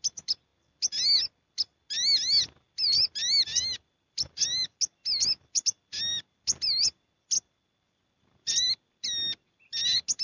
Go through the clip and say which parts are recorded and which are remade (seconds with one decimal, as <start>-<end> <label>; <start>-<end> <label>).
0.0-10.2 recorded